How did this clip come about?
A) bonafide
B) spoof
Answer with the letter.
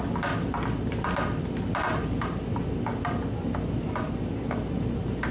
A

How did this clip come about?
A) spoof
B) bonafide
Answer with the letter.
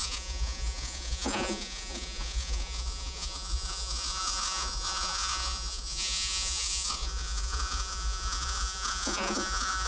A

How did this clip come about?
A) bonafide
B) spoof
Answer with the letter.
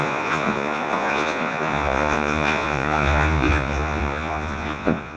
B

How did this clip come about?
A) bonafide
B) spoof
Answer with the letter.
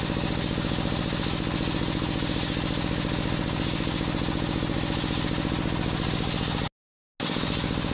A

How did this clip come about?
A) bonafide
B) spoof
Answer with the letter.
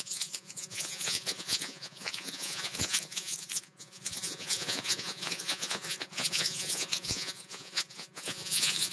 B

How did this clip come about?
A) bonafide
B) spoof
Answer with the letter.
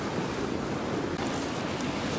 A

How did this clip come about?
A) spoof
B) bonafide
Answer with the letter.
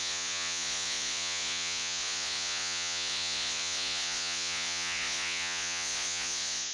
A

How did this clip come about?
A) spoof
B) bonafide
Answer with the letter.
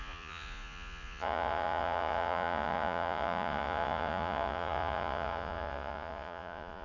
A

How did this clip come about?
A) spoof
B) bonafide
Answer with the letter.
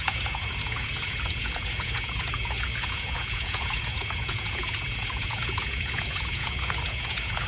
A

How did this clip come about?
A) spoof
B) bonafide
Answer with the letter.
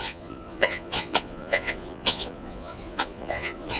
A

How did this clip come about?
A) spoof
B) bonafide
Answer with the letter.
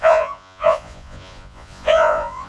A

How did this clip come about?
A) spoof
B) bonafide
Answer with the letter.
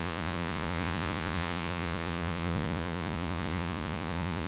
A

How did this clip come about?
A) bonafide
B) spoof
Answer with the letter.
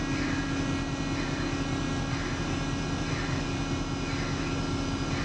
A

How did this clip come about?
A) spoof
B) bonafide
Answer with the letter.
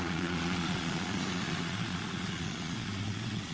A